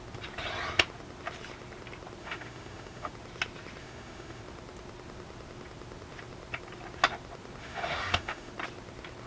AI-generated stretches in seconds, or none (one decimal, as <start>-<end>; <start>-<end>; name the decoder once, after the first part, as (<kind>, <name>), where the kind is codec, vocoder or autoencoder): 2.2-3.1 (autoencoder, DAC-VAE); 3.8-4.4; 7.6-8.5